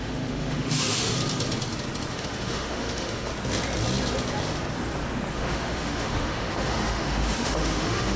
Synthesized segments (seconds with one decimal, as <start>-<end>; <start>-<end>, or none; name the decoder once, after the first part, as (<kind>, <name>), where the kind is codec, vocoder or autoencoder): 0.0-1.2 (autoencoder, DAC-VAE); 2.1-3.3; 5.3-8.2